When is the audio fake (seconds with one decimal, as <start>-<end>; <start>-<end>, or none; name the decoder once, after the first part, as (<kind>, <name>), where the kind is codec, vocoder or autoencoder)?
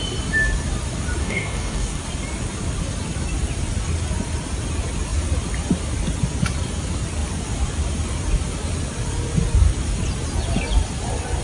1.2-2.0 (codec, DAC)